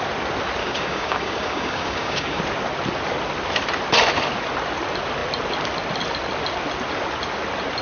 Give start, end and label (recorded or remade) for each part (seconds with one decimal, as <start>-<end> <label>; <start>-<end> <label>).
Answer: 0.0-0.6 recorded; 0.6-2.4 remade; 2.4-7.8 recorded